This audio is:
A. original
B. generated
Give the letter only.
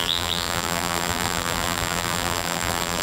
B